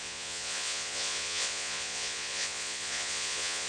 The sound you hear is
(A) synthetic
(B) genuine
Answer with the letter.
A